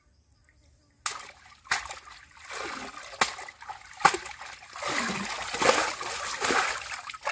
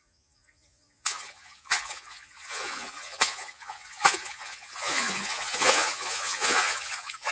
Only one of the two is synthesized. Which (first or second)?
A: second